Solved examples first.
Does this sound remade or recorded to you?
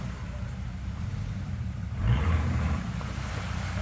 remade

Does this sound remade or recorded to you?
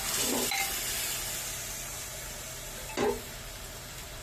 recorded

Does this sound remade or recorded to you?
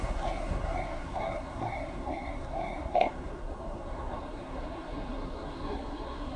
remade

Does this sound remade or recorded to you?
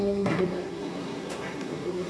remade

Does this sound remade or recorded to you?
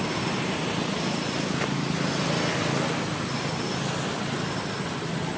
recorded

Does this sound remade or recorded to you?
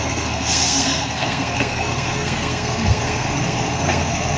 remade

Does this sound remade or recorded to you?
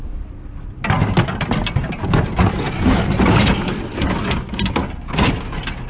recorded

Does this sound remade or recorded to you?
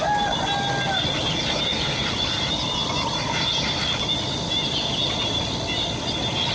recorded